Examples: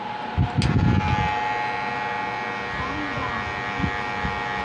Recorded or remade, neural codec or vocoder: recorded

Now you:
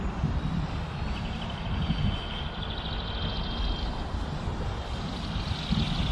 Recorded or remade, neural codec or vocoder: recorded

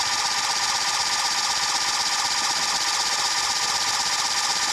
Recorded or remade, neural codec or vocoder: recorded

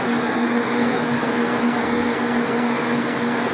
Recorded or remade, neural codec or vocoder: remade, codec, SNAC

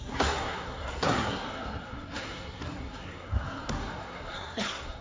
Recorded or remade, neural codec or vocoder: remade, codec, SNAC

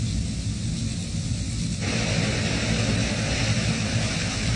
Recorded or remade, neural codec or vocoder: recorded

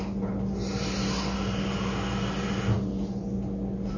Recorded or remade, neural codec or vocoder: recorded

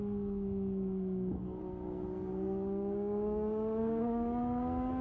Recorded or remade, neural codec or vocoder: remade, codec, SNAC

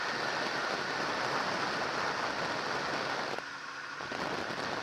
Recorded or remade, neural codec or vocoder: recorded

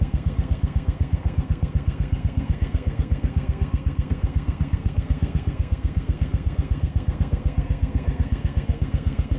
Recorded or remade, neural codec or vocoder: remade, codec, SNAC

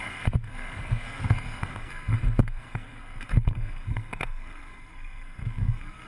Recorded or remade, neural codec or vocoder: remade, codec, SNAC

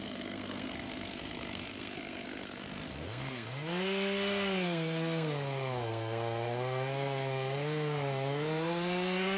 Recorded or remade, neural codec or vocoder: remade, codec, SNAC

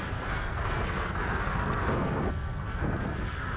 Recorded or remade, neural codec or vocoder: remade, codec, SNAC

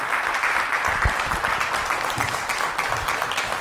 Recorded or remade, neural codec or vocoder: recorded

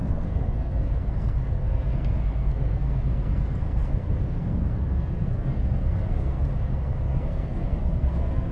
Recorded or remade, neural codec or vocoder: remade, codec, SNAC